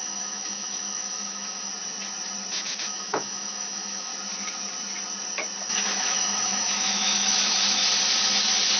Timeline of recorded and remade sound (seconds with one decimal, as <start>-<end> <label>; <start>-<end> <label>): 0.0-1.7 remade; 1.7-2.5 recorded; 2.5-4.1 remade; 4.1-5.7 recorded; 5.7-7.8 remade; 7.8-8.8 recorded